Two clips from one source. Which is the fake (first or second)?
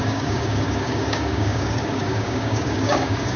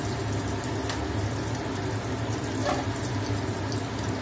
first